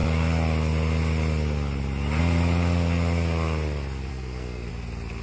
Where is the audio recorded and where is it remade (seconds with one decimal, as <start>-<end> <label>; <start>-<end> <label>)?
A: 0.0-4.1 recorded; 4.1-4.7 remade; 4.7-5.2 recorded